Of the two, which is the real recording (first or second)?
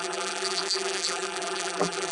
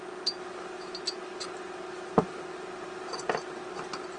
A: second